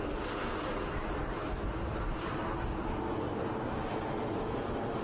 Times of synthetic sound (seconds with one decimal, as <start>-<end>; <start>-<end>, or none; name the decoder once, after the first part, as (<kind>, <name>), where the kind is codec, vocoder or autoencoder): 1.2-4.2 (vocoder, BigVGAN v2)